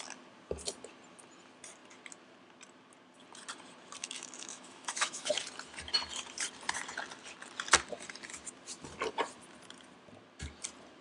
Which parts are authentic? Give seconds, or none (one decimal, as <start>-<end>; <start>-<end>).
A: 0.0-4.0; 5.3-11.0